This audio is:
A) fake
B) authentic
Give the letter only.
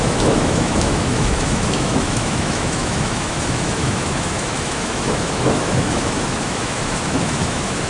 A